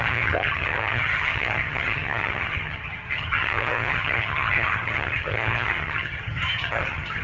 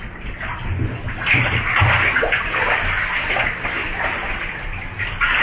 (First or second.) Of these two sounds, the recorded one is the second